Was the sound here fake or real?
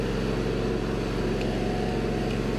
real